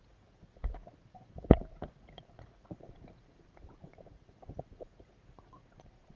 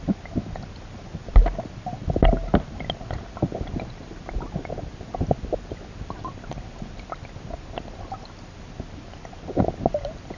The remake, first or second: first